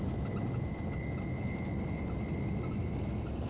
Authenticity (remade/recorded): recorded